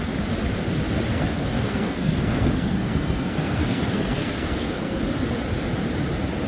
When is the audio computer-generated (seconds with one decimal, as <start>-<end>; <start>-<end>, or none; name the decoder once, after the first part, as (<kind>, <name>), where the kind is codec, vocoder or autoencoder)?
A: 1.1-5.0 (codec, SNAC)